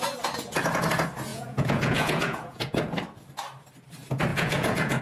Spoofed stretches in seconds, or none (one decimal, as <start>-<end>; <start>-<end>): 1.3-2.8; 4.3-5.0